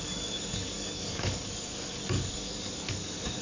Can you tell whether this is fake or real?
fake